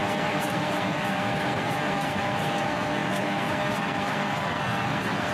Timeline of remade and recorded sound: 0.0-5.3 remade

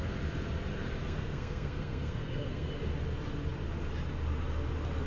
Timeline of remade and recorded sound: 0.0-1.0 recorded; 1.0-2.7 remade; 2.7-5.1 recorded

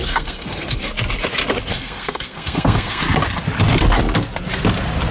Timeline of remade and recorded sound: 0.0-0.9 remade; 0.9-1.7 recorded; 1.7-3.0 remade; 3.0-5.1 recorded

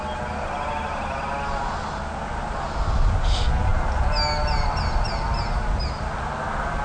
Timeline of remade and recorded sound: 0.0-6.8 recorded

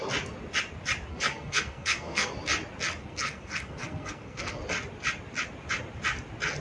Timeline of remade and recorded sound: 0.0-1.1 recorded; 1.1-2.3 remade; 2.3-3.0 recorded; 3.0-4.6 remade; 4.6-6.6 recorded

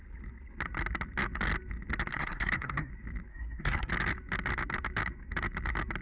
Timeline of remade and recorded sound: 0.0-2.1 recorded; 2.1-2.9 remade; 2.9-3.3 recorded; 3.3-3.9 remade; 3.9-6.0 recorded